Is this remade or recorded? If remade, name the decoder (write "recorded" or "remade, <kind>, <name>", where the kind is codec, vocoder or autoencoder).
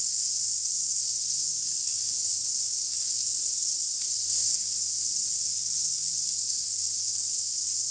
remade, codec, SNAC